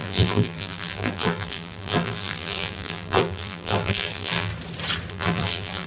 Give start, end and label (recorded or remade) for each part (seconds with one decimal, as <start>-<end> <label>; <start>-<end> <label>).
0.0-4.5 remade; 4.5-5.1 recorded; 5.1-5.9 remade